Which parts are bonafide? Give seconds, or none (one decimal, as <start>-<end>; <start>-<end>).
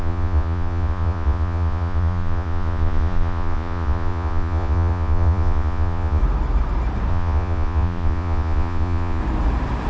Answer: 6.2-7.1; 9.2-9.9